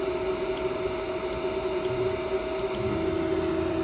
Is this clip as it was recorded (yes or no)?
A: yes